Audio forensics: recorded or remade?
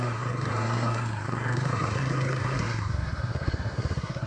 remade